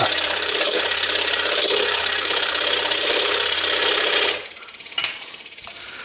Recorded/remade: remade